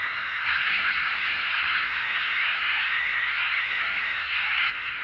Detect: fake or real fake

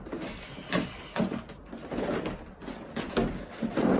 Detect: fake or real real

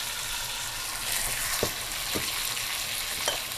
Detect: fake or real real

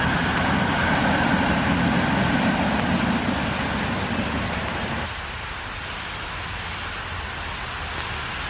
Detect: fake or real real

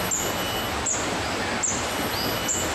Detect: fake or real real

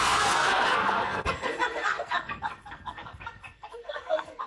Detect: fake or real fake